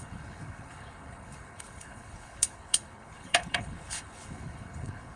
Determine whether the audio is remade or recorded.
remade